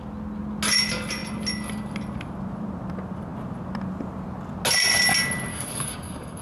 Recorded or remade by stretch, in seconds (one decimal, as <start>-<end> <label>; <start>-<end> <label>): 0.0-5.5 recorded; 5.5-6.4 remade